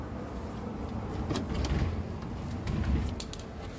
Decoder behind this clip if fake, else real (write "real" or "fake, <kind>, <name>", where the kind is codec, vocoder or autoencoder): real